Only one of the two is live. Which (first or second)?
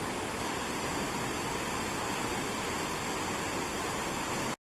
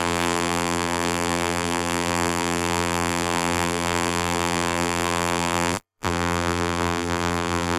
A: first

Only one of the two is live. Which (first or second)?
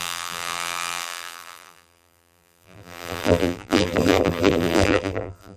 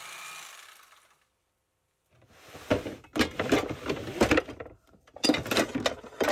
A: second